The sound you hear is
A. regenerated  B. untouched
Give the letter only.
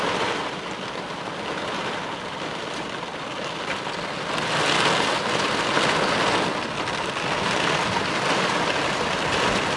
B